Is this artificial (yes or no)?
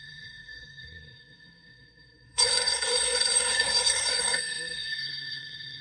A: yes